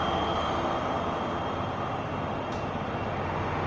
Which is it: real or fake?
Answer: real